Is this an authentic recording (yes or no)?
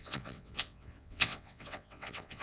no